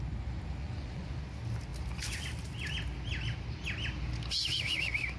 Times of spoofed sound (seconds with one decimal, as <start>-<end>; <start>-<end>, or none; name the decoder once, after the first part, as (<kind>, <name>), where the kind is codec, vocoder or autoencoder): 0.6-1.2 (vocoder, Vocos)